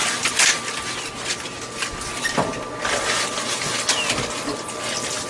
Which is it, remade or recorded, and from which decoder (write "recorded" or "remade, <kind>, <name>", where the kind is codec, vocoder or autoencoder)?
recorded